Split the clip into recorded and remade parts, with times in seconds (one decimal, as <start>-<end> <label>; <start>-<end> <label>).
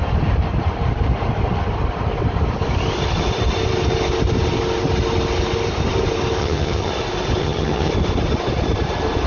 0.0-6.4 recorded; 6.4-6.9 remade; 6.9-7.4 recorded; 7.4-7.9 remade; 7.9-9.3 recorded